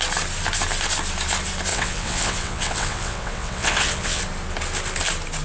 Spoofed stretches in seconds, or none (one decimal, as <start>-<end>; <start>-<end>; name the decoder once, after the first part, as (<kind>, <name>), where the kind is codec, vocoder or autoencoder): 1.7-4.2 (vocoder, WaveNeXt)